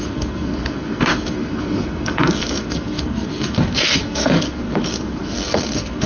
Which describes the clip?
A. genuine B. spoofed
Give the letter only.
B